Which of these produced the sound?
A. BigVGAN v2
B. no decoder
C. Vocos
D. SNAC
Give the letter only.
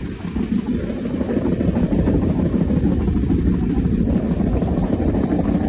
B